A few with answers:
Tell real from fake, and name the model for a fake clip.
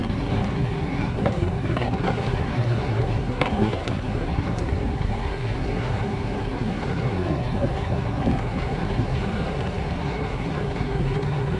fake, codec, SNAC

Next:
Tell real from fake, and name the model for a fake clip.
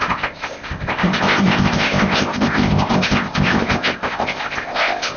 fake, codec, ZipCodec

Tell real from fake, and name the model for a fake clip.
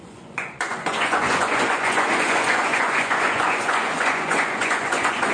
fake, vocoder, Vocos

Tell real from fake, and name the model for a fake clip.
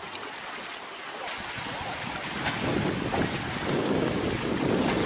real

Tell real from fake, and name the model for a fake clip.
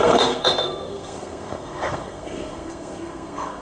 fake, codec, SNAC